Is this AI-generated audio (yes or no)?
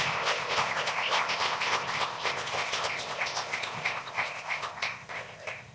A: yes